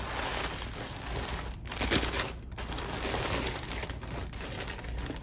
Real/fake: real